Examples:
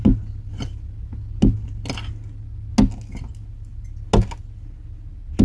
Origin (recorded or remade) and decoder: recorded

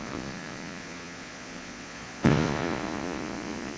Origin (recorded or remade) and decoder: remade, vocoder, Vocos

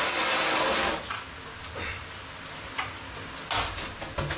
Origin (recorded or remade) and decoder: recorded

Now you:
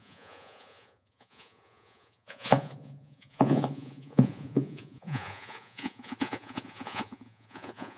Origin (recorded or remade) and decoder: remade, vocoder, Vocos